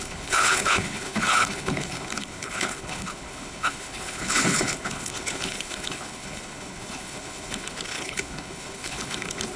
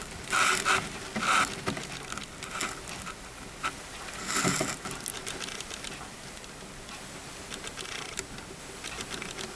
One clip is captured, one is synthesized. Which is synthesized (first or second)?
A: first